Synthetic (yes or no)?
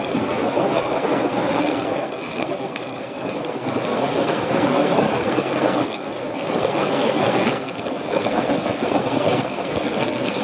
yes